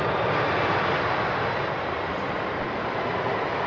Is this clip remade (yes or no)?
no